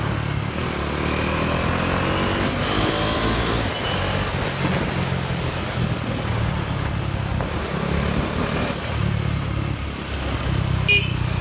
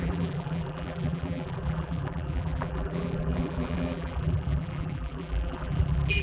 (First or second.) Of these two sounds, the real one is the first